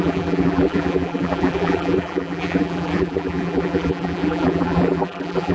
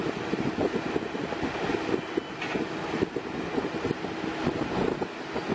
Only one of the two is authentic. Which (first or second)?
second